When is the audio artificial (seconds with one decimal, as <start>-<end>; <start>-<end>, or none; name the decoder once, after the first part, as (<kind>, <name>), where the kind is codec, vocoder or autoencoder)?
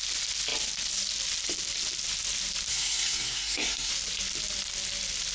2.7-3.9 (codec, SNAC)